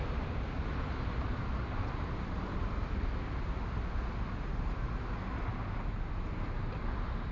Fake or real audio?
real